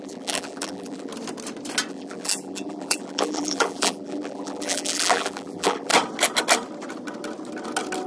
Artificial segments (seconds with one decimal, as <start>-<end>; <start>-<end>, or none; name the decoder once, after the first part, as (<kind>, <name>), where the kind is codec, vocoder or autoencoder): 0.0-1.1 (vocoder, BigVGAN v2); 1.9-5.9